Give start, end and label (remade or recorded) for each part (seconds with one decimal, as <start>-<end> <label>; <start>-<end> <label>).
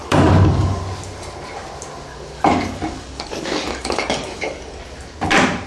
0.0-0.8 remade; 0.8-2.1 recorded; 2.1-4.8 remade; 4.8-5.7 recorded